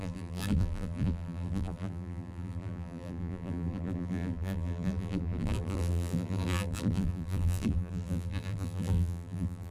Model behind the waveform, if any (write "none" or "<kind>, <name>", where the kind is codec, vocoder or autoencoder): vocoder, BigVGAN v2